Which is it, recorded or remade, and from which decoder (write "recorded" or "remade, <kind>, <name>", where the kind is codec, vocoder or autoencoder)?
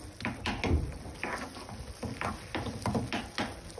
recorded